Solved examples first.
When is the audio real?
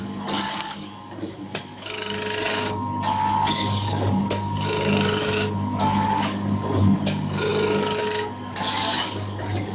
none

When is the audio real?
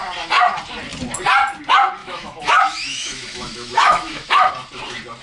0.0-2.0; 4.5-5.2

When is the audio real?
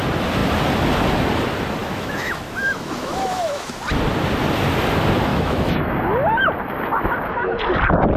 0.0-1.8; 3.8-5.3; 5.9-8.2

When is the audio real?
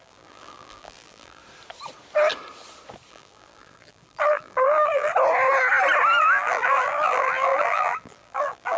1.4-3.1; 5.1-6.2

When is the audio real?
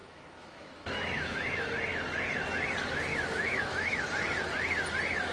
1.7-3.1; 4.0-5.3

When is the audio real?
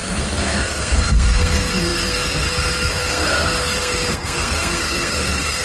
none